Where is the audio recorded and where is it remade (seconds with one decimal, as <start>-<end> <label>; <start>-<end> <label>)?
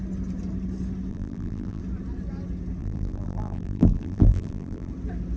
0.0-1.1 recorded; 1.1-1.8 remade; 1.8-2.8 recorded; 2.8-4.9 remade; 4.9-5.4 recorded